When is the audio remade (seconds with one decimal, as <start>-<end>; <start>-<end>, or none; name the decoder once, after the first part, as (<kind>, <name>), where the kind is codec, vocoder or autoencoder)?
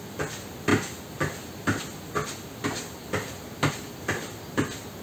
none